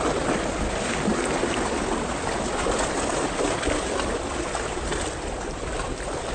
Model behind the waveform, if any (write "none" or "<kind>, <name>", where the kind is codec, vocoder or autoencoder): none